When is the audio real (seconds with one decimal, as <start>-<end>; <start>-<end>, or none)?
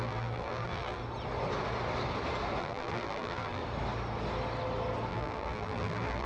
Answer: 1.0-2.6; 3.6-5.1